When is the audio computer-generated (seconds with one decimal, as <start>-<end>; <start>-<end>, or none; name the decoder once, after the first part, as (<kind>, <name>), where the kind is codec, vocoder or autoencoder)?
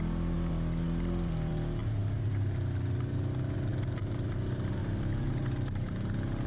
none